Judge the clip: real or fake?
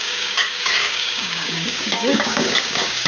fake